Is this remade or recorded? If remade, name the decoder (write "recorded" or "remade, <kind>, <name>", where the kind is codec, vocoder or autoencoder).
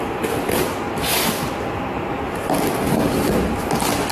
recorded